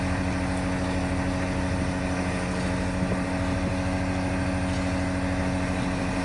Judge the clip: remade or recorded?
recorded